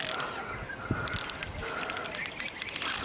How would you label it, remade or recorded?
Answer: recorded